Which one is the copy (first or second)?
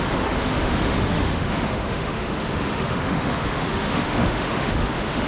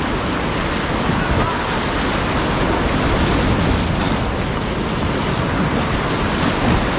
first